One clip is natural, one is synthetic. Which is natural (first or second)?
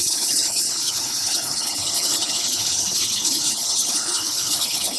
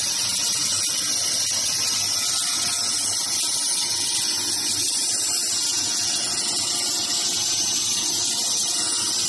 second